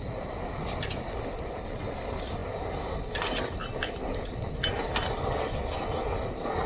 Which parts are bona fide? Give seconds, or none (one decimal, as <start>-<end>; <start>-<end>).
0.0-6.7